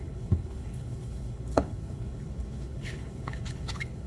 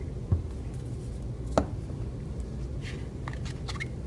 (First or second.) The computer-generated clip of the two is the first